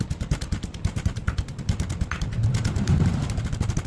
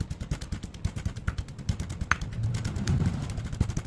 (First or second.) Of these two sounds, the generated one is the first